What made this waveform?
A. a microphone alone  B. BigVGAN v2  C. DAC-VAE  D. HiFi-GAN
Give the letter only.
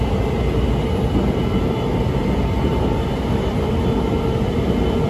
A